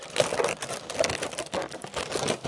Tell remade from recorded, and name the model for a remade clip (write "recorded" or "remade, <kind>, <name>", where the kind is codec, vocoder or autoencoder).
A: recorded